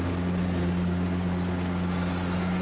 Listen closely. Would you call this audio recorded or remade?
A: recorded